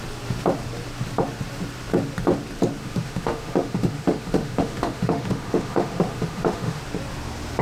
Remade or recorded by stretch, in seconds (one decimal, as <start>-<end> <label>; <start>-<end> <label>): 0.0-2.8 recorded; 2.8-6.8 remade; 6.8-7.6 recorded